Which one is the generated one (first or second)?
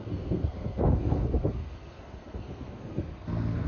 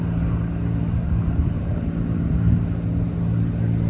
first